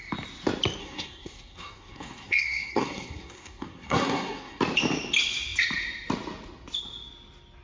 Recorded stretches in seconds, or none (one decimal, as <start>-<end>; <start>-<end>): 0.0-0.8; 4.6-7.6

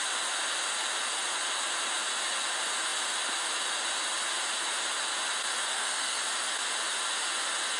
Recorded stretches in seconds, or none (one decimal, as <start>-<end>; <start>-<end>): 0.0-5.7; 6.2-7.8

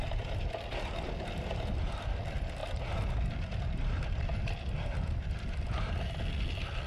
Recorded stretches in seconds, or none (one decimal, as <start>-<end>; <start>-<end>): 0.0-6.9

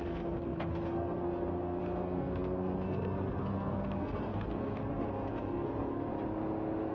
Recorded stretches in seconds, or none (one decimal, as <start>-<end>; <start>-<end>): 6.1-6.9